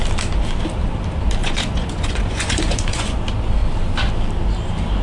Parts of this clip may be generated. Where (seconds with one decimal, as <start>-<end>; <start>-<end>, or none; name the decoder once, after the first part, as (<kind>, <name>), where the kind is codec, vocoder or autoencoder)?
1.4-3.2 (vocoder, Vocos)